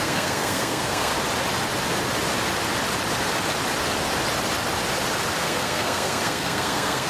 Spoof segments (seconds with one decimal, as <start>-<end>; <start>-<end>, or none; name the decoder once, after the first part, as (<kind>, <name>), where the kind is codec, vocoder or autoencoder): 0.0-1.1 (codec, SNAC); 5.4-7.1